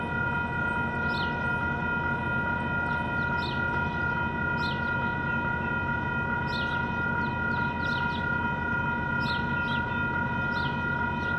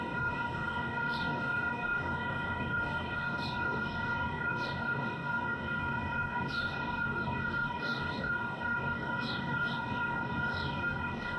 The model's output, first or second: second